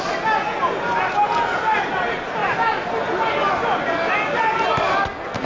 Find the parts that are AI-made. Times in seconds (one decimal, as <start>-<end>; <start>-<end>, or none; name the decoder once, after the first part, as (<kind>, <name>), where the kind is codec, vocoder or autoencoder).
none

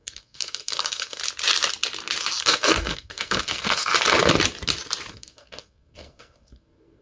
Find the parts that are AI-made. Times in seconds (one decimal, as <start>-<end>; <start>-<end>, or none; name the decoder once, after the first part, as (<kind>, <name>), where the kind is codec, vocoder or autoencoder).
0.0-1.2 (codec, SNAC); 2.4-3.9; 5.1-7.0

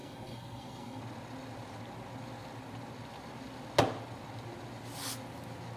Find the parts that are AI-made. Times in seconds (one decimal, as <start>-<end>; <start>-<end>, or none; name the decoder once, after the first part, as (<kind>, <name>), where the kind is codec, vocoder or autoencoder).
0.0-1.0 (codec, SNAC)

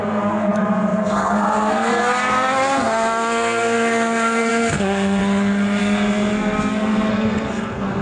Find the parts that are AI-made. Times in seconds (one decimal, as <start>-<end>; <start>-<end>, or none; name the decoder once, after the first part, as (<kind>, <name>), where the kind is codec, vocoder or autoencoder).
0.0-5.2 (codec, SNAC); 5.8-8.0